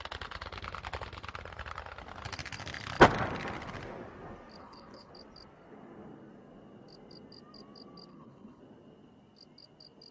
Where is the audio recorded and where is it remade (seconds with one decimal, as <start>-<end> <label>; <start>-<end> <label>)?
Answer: 0.0-4.6 recorded; 4.6-5.1 remade; 5.1-8.1 recorded; 8.1-8.6 remade; 8.6-10.1 recorded